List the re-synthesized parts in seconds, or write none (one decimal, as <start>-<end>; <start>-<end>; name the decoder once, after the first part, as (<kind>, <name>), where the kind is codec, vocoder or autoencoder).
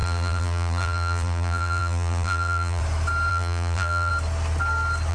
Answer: 0.0-2.8 (vocoder, BigVGAN v2); 3.3-4.1